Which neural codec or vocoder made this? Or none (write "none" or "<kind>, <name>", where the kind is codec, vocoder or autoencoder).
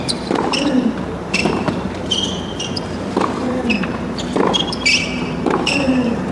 vocoder, BigVGAN v2